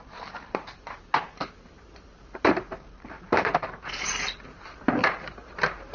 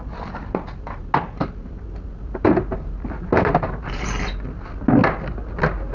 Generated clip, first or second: first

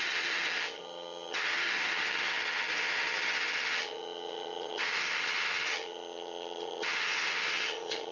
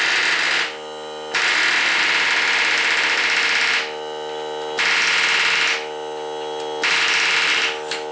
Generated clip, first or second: first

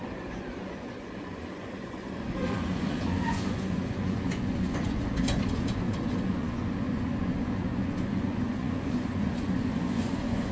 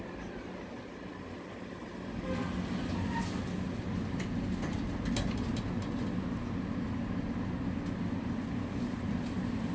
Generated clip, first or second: first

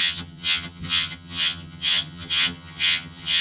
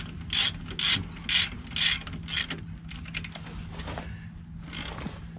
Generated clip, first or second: first